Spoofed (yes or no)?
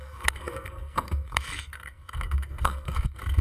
yes